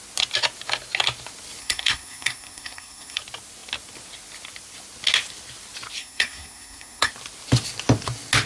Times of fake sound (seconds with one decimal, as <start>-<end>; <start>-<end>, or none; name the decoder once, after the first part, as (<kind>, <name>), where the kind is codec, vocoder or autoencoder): 1.6-3.2 (codec, SNAC); 6.0-7.1